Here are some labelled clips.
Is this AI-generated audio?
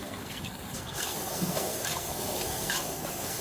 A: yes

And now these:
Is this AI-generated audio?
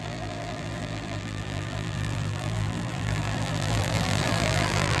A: yes